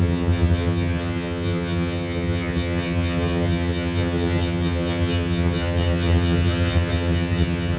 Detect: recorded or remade remade